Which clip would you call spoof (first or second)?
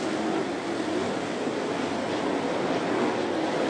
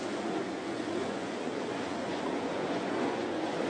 second